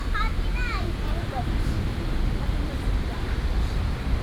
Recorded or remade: remade